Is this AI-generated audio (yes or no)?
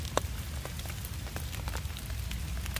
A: no